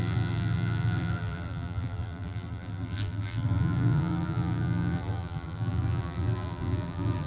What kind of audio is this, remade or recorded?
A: remade